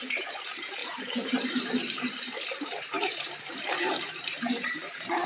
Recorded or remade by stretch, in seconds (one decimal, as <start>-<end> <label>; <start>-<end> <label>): 0.0-5.3 remade